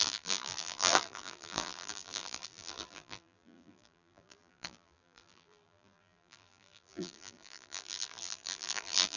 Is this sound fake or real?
fake